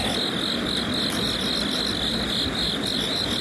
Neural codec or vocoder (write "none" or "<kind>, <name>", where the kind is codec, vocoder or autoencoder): none